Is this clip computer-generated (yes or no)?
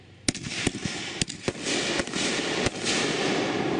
no